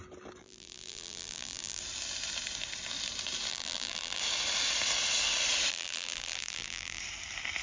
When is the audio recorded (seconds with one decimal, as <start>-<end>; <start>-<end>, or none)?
0.0-0.4; 1.8-3.5; 4.2-5.7; 7.0-7.6